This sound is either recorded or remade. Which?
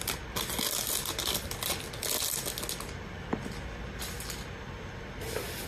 recorded